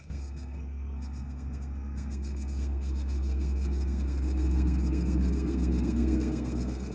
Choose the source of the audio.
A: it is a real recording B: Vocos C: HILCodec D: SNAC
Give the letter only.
D